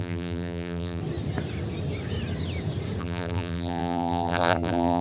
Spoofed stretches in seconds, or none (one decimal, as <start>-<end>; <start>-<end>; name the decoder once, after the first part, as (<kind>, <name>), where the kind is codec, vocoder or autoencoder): 0.0-1.0 (vocoder, BigVGAN v2); 3.0-5.0